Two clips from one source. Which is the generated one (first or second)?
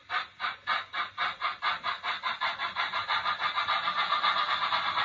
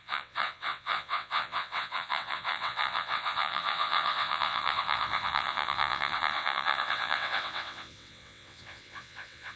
second